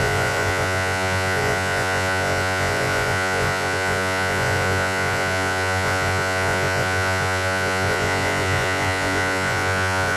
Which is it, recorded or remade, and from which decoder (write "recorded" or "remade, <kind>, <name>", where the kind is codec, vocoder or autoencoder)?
remade, vocoder, Vocos